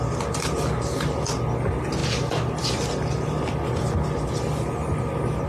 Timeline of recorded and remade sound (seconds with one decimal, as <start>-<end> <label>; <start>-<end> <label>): 0.0-5.5 recorded